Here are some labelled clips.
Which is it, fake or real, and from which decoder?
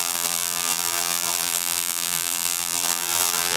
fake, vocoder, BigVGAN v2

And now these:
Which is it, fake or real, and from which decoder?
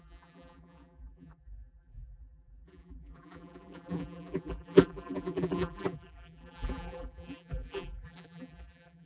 fake, vocoder, BigVGAN v2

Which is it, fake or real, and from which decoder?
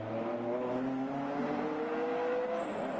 real